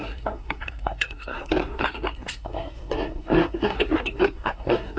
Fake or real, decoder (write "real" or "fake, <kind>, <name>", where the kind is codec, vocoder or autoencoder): fake, codec, SNAC